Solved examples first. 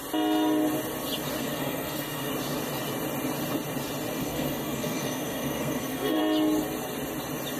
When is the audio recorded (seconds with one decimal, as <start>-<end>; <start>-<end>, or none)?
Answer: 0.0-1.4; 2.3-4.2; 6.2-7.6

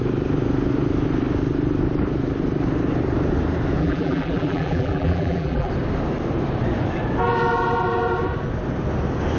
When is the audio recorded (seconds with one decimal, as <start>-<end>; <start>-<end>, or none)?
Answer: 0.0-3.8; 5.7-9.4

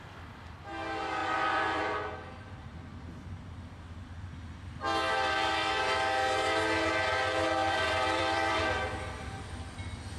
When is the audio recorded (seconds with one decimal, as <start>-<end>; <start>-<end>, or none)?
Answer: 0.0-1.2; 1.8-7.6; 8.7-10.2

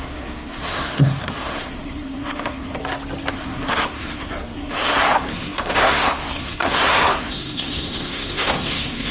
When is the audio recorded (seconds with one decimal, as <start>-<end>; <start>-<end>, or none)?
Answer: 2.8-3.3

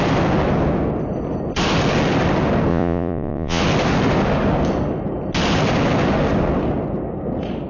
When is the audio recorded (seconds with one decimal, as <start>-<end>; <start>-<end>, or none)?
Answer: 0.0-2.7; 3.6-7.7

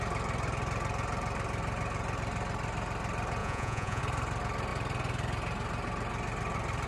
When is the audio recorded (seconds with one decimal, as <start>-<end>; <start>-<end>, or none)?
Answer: 0.0-3.4; 4.0-6.9

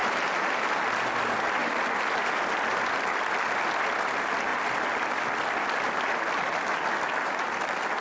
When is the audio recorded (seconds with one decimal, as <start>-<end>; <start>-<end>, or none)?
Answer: 0.0-8.0